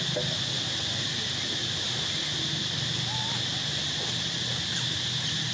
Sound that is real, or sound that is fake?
real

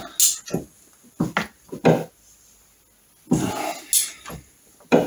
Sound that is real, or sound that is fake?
real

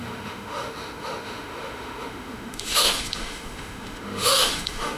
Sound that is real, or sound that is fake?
fake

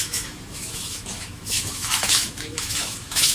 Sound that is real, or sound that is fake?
fake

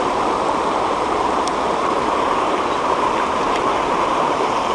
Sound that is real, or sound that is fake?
real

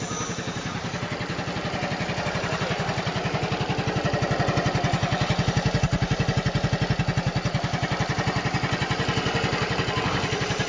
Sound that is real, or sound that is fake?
real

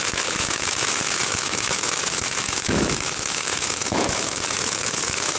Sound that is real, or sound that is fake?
fake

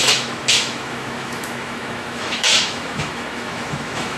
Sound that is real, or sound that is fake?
fake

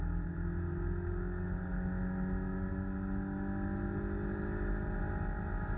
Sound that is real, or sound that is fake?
real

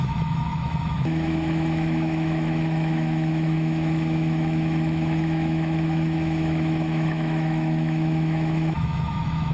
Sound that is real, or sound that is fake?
fake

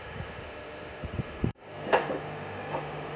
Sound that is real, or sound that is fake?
fake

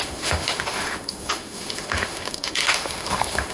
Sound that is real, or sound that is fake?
fake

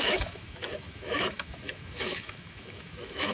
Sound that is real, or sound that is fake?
fake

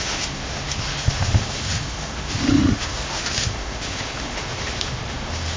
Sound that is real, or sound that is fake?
fake